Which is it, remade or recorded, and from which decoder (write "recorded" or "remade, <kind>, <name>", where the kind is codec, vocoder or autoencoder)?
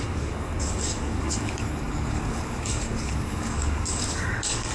remade, codec, DAC